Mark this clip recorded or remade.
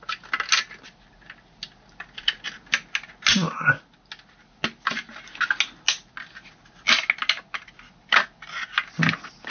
recorded